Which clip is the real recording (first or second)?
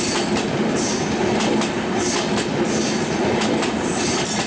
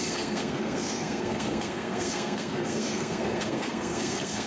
first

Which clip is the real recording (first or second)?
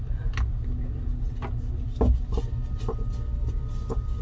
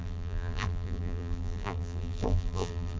first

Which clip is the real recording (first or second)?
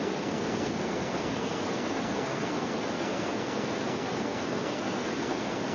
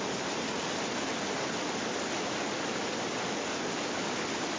second